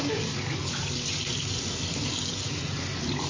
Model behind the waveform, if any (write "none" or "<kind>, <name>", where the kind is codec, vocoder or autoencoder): none